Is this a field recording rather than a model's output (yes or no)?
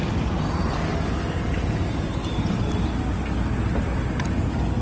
yes